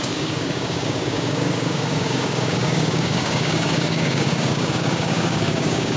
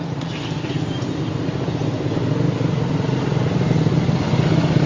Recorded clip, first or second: second